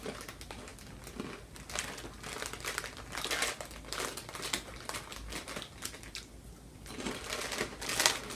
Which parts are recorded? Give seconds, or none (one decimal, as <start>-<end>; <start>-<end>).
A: 0.0-8.3

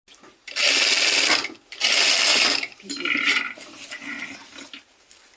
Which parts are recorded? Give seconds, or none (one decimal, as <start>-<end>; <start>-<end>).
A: 0.0-2.3; 2.9-5.4

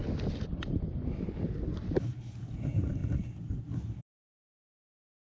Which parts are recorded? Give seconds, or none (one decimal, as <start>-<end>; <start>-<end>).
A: 0.0-1.8; 3.0-4.0

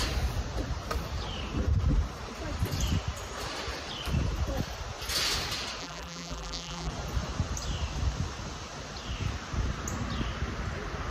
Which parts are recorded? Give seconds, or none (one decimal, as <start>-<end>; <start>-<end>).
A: 0.0-5.8; 6.9-11.1

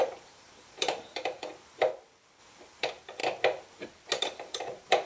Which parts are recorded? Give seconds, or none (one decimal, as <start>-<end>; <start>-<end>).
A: 1.9-2.4; 3.2-4.2

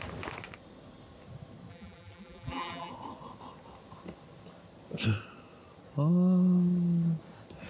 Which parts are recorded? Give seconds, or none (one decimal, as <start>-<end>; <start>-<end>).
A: 0.0-1.7; 2.9-7.7

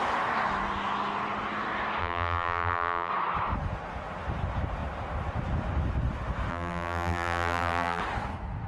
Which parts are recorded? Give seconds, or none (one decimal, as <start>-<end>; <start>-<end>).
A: 0.0-2.0; 3.1-6.5; 8.0-8.7